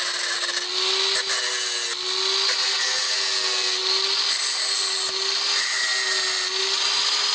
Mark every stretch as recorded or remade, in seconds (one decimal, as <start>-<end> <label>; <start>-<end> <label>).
0.0-7.3 recorded